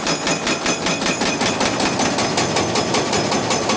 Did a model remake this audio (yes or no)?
no